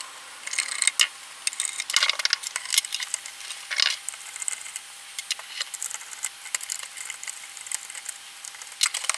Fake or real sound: real